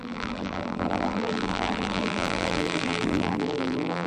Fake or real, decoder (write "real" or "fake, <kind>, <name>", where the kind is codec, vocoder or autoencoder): fake, vocoder, BigVGAN v2